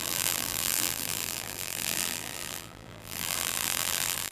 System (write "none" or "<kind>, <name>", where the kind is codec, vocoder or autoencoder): vocoder, BigVGAN v2